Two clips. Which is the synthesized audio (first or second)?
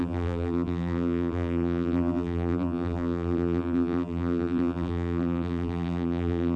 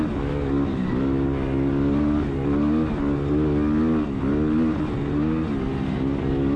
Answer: first